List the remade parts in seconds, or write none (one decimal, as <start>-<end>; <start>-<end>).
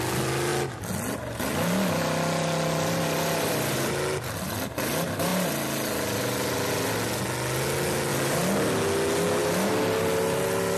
none